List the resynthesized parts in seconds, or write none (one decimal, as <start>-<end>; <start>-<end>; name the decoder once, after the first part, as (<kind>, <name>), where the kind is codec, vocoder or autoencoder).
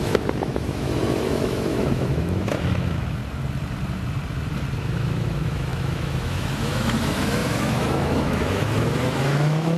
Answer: 0.0-3.2 (autoencoder, DAC-VAE); 4.8-9.8